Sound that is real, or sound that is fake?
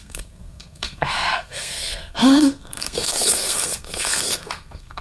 fake